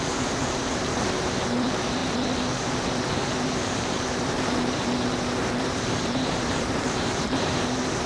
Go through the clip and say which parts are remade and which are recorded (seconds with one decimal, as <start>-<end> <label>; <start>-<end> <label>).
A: 0.0-2.0 remade; 2.0-3.2 recorded; 3.2-8.1 remade